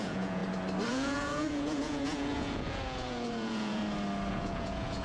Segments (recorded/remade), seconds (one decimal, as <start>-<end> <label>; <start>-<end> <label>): 0.0-0.4 remade; 0.4-0.9 recorded; 0.9-3.8 remade; 3.8-4.3 recorded; 4.3-5.0 remade